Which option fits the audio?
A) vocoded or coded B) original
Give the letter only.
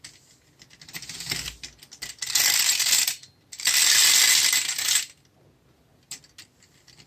B